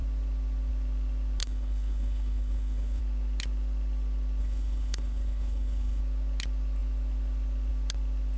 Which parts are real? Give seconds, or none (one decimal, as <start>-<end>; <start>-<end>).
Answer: 0.0-1.4; 3.0-4.4; 6.0-8.4